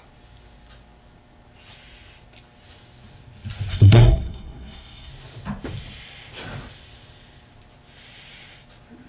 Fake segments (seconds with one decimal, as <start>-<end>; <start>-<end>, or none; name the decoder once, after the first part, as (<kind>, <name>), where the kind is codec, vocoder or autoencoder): 3.7-5.1 (codec, SNAC)